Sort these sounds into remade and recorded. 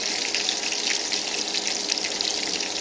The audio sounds recorded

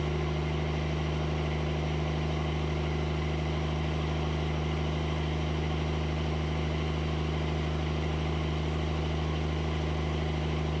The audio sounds recorded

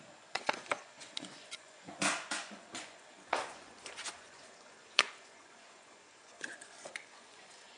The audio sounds remade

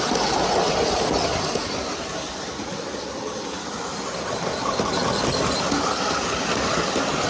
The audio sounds recorded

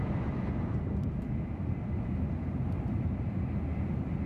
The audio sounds recorded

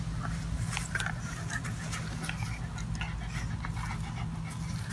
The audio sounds recorded